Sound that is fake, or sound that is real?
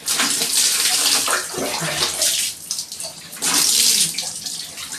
real